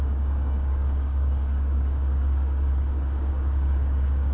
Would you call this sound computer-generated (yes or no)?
yes